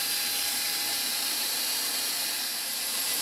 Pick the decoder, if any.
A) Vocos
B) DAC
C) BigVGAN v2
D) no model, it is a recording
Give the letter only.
C